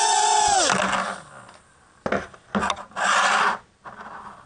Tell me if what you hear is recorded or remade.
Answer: recorded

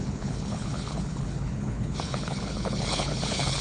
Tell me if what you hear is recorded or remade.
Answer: remade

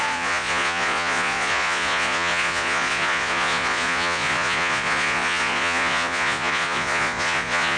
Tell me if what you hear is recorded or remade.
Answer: remade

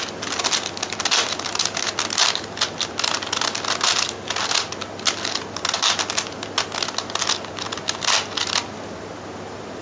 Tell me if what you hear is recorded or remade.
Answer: recorded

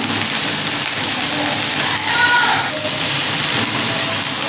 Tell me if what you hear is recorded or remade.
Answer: recorded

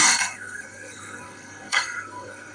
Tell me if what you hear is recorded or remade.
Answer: remade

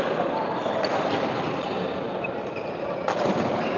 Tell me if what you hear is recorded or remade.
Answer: recorded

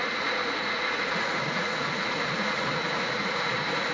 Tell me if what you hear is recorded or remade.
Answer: remade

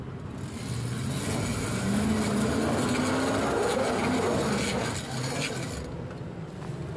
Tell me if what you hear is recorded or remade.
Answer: recorded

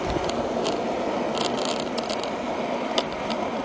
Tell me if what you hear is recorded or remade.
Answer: recorded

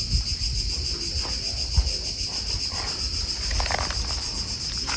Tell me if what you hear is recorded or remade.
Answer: recorded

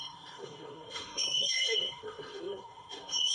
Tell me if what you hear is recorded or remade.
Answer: remade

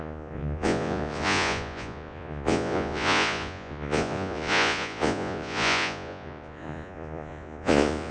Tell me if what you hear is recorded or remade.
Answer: remade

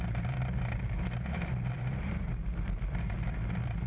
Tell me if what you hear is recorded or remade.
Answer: remade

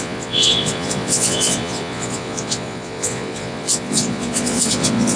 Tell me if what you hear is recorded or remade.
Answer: remade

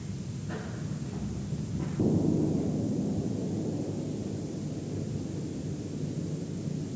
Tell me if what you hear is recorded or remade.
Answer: recorded